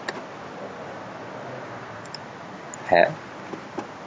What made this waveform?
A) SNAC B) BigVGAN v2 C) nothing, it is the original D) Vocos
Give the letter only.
C